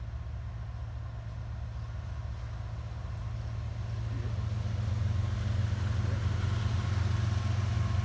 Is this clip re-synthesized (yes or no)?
no